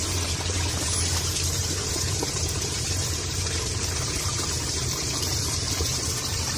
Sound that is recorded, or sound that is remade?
remade